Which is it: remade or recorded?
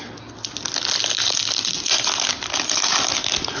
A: recorded